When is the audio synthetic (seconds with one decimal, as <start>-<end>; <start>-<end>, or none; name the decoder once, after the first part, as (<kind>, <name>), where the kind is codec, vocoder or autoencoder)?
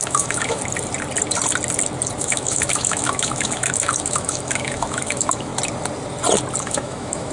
0.0-0.6 (autoencoder, DAC-VAE); 2.2-5.5; 6.6-7.3